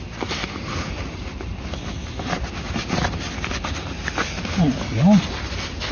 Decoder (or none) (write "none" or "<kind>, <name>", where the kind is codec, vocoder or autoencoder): none